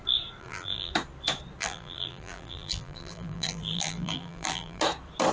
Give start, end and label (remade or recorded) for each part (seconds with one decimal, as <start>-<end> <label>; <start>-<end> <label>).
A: 0.0-0.4 recorded; 0.4-0.9 remade; 0.9-1.6 recorded; 1.6-4.8 remade; 4.8-5.3 recorded